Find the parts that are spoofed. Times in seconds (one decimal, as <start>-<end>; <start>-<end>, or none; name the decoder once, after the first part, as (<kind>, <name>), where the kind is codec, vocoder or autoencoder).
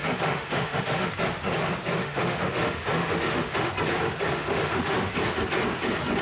0.0-1.1 (autoencoder, DAC-VAE); 2.0-3.7; 4.3-5.1